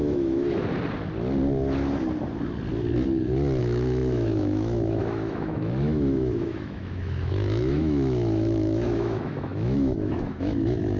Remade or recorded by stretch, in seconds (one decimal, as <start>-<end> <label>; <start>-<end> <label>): 0.0-0.6 remade; 0.6-3.6 recorded; 3.6-11.0 remade